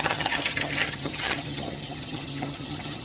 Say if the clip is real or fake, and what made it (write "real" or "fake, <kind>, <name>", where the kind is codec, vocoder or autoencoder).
fake, vocoder, HiFi-GAN